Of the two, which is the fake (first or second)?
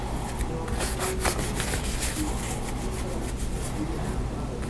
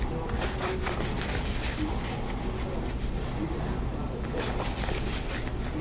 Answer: second